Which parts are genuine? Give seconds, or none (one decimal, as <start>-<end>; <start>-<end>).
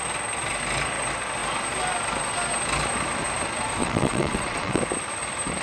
0.0-3.8; 4.8-5.6